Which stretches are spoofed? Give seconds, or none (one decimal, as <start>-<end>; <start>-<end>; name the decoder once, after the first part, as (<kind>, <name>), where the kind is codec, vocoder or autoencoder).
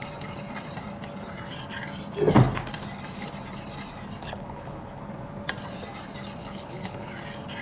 4.2-5.0 (codec, HILCodec); 6.4-7.1